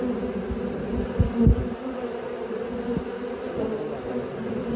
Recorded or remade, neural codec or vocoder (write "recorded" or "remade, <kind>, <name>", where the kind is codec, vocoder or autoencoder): recorded